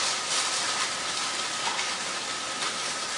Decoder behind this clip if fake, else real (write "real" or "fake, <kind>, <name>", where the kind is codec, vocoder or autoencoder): real